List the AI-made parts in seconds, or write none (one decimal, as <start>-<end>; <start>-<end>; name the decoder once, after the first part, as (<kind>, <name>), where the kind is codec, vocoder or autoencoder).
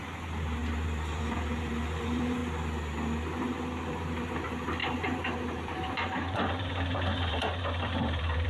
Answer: 0.0-2.4 (vocoder, BigVGAN v2); 3.8-8.5